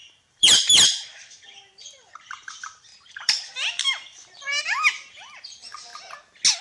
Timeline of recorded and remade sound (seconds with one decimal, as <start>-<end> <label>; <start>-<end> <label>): 0.0-5.9 remade; 5.9-6.6 recorded